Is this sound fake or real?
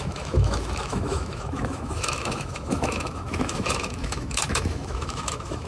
fake